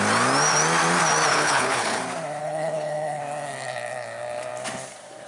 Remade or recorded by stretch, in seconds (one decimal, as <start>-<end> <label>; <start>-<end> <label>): 0.0-1.3 recorded; 1.3-2.0 remade; 2.0-2.4 recorded; 2.4-3.2 remade; 3.2-5.3 recorded